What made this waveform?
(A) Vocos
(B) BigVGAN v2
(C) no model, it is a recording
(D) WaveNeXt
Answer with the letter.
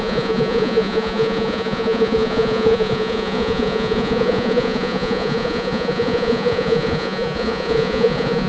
A